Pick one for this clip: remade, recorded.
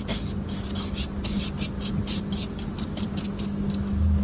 recorded